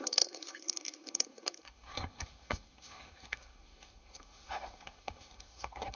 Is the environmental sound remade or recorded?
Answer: remade